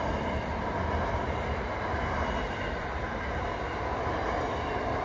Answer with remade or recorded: recorded